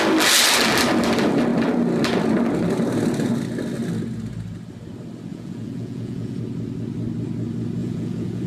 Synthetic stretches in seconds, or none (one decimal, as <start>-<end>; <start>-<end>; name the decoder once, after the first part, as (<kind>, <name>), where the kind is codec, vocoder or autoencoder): 5.3-6.4 (vocoder, Vocos); 7.8-8.5